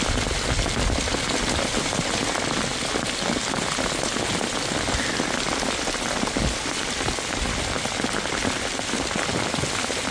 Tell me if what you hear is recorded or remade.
recorded